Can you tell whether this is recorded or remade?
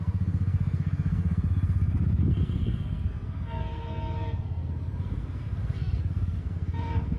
remade